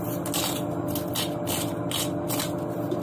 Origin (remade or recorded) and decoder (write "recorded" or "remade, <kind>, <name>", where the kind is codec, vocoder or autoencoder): recorded